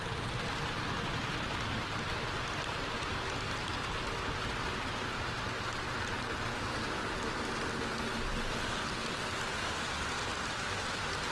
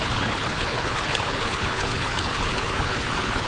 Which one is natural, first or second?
first